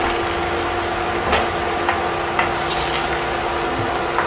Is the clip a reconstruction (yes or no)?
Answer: no